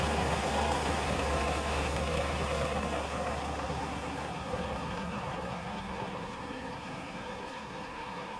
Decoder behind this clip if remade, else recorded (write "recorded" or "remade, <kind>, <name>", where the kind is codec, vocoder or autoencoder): remade, codec, SNAC